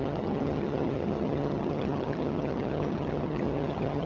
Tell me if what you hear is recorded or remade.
remade